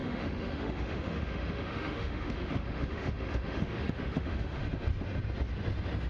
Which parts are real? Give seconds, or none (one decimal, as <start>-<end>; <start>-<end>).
4.6-6.1